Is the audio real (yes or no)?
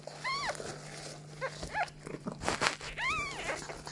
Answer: yes